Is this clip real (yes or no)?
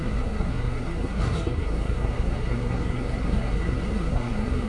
no